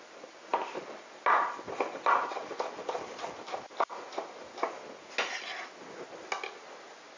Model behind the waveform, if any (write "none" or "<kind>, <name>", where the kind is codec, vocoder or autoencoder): none